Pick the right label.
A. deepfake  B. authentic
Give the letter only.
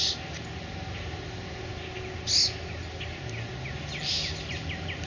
B